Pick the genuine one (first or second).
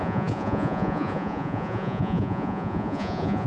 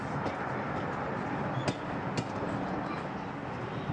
second